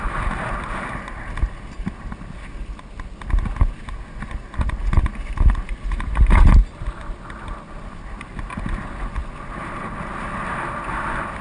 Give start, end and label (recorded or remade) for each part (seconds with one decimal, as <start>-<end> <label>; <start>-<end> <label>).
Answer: 0.0-11.4 recorded